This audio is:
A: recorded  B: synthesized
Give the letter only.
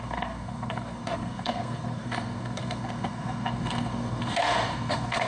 B